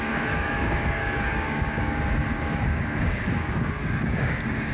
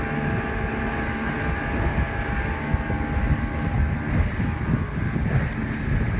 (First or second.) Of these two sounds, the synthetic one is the first